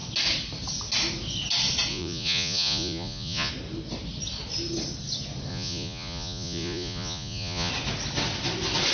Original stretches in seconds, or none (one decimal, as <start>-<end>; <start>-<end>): 0.0-1.9; 3.5-5.5; 7.7-8.9